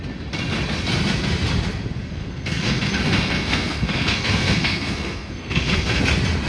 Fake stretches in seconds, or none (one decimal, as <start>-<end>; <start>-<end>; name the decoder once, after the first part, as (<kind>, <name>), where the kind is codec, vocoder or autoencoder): 2.1-6.0 (codec, SNAC)